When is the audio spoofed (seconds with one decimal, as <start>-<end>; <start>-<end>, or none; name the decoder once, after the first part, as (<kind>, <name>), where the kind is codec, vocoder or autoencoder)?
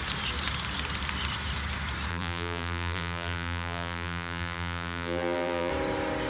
2.1-5.7 (vocoder, BigVGAN v2)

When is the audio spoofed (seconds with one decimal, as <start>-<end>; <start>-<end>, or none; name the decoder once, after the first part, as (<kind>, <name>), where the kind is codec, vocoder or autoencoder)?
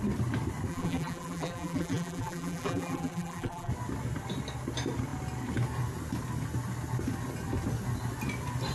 0.7-3.7 (vocoder, BigVGAN v2)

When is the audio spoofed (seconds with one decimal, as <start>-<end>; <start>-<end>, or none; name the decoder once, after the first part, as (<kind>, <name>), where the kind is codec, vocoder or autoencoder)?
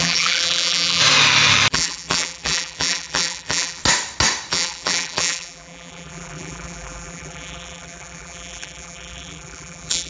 0.0-1.0 (vocoder, BigVGAN v2); 1.7-3.8; 4.5-10.1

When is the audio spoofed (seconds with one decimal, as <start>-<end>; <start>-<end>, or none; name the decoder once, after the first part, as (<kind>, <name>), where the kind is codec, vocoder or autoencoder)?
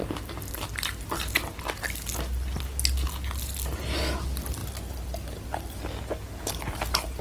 0.0-0.7 (vocoder, BigVGAN v2)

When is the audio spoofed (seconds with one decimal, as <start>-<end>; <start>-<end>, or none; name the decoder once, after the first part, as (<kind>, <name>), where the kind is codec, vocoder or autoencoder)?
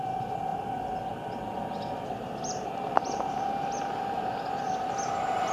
0.5-3.4 (vocoder, BigVGAN v2)